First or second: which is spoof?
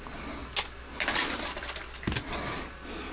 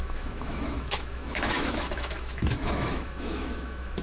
second